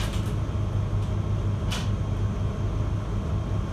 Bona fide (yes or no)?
yes